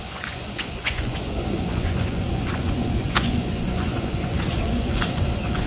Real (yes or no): no